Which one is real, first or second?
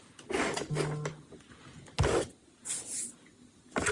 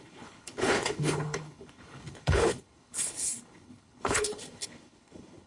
first